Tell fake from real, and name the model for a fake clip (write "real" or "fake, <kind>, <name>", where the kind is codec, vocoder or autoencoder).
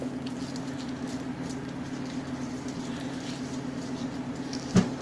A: real